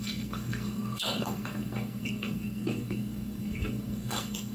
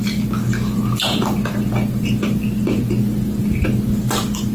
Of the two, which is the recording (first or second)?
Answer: second